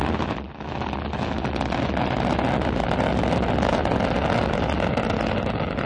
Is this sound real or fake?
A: real